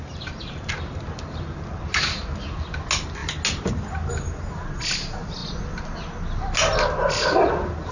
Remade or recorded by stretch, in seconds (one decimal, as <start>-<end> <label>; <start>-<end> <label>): 0.0-7.9 recorded